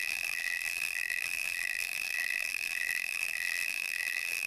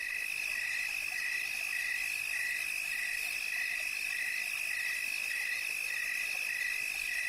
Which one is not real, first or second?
first